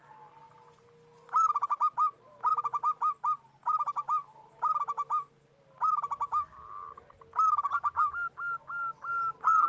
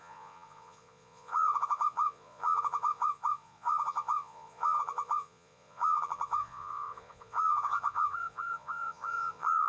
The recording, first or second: first